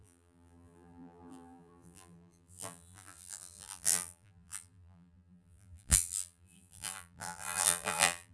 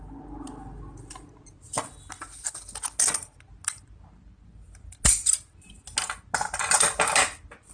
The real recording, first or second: second